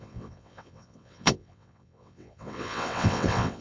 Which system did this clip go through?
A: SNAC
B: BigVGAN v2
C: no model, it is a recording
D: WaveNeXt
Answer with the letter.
D